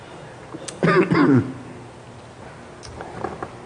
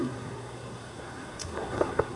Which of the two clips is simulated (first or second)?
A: second